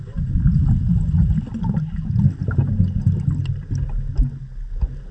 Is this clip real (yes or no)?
yes